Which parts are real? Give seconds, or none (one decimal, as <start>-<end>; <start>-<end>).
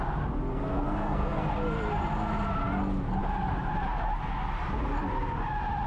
0.0-0.5; 1.5-5.9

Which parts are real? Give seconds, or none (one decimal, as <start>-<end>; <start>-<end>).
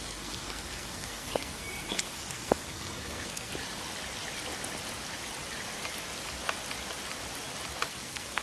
3.5-7.9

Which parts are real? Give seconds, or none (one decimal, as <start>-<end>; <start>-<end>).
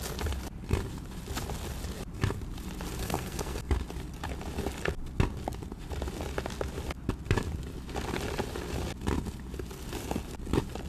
0.0-3.0; 3.7-10.9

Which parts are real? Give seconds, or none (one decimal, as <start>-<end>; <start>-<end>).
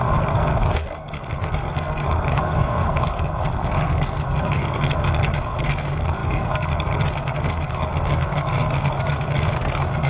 none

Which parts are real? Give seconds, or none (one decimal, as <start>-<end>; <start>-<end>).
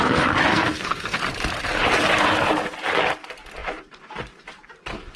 0.0-0.5; 1.2-5.2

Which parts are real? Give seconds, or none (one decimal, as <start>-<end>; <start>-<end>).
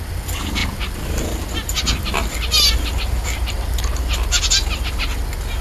0.0-5.6